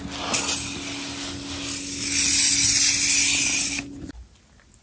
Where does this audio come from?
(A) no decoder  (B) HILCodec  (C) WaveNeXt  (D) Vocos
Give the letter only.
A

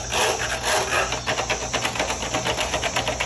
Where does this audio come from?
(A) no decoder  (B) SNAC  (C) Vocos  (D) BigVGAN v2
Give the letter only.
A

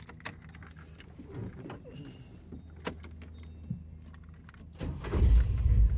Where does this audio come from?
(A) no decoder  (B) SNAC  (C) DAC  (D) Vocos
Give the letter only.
A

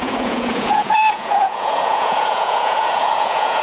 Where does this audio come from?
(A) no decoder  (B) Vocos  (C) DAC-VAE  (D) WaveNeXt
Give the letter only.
B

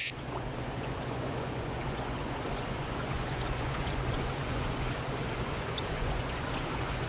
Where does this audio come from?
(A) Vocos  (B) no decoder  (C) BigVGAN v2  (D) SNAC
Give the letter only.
A